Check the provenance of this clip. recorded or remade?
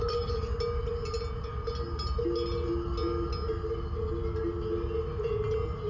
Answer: recorded